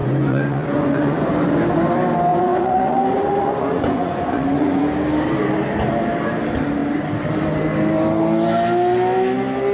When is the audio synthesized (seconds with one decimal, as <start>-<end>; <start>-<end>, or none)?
0.0-1.3; 2.3-4.8